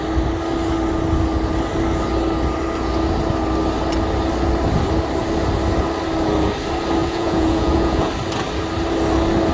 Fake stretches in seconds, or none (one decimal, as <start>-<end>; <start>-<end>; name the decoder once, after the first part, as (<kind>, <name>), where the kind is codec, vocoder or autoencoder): 7.0-8.1 (vocoder, Vocos)